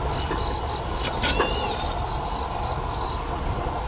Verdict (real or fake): real